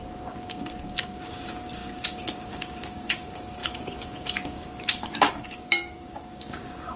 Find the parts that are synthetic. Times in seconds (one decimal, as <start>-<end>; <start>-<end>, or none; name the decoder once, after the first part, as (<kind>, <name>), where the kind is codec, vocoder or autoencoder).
0.0-7.0 (codec, DAC)